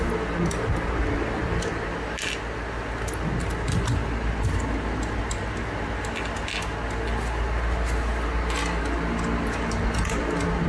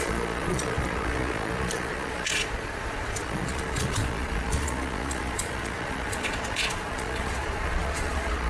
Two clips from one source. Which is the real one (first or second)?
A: first